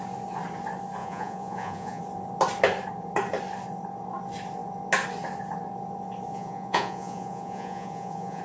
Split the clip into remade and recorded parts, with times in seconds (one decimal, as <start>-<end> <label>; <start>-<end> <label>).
0.0-1.0 recorded; 1.0-2.0 remade; 2.0-6.3 recorded; 6.3-8.4 remade